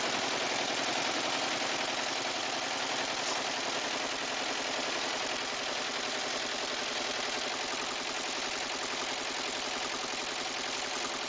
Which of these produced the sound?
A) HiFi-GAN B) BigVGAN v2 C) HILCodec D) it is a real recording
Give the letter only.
D